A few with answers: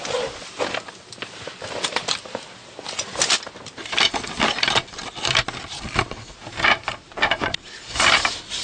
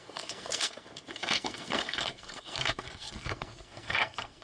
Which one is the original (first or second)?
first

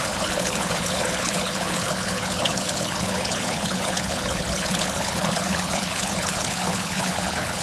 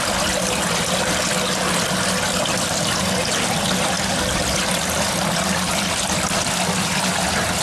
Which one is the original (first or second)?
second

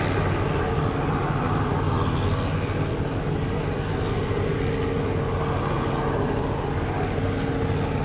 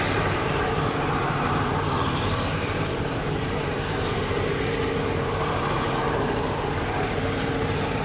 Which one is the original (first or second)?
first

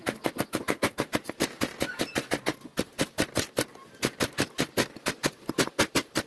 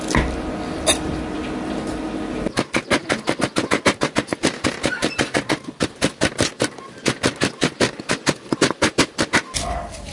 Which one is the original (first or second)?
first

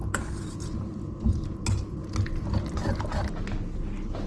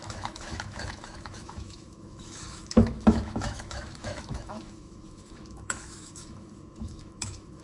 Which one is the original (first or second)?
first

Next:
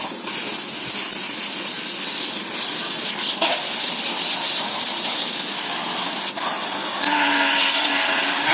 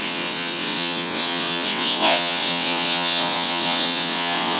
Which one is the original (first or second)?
first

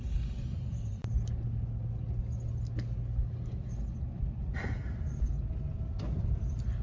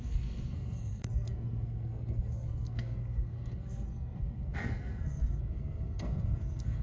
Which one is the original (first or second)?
first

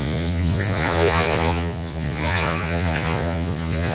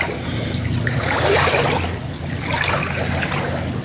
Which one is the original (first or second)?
second